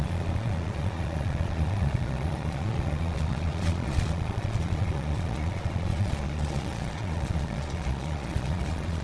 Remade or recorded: remade